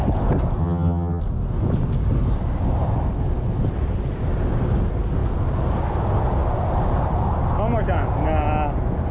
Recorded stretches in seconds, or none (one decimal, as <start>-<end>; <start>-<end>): 0.0-0.6; 1.2-9.1